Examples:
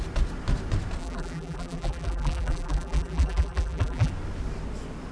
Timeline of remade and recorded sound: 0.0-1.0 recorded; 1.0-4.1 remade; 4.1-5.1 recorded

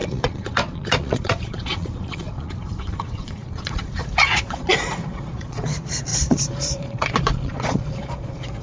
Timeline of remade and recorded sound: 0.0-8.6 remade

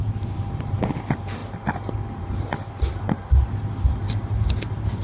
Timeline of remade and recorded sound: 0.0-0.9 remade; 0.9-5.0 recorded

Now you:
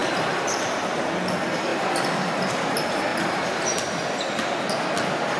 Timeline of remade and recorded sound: 0.0-1.0 remade; 1.0-3.1 recorded; 3.1-4.8 remade; 4.8-5.4 recorded